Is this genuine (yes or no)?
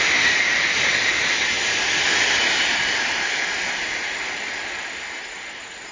yes